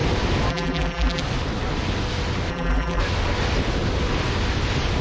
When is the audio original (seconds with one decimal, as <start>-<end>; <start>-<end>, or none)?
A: 0.0-0.5; 1.2-2.5; 3.0-5.0